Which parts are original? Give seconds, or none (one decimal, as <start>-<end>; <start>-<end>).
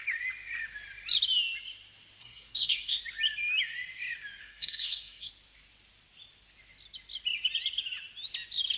0.0-2.2; 3.0-4.4; 5.3-8.8